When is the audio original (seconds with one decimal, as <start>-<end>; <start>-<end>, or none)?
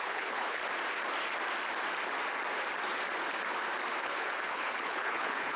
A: 0.6-4.0